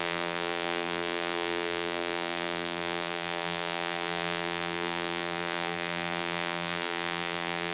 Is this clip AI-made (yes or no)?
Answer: yes